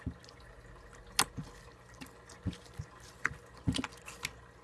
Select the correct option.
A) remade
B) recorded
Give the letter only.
B